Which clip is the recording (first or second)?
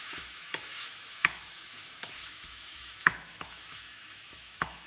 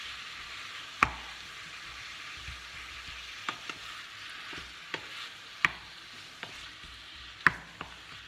second